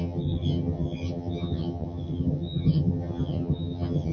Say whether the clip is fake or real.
fake